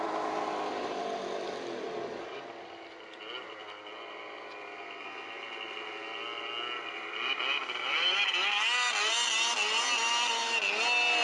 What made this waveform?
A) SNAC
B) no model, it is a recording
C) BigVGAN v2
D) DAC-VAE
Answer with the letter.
B